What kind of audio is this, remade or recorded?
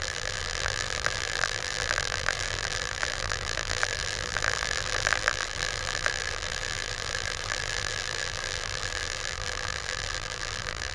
remade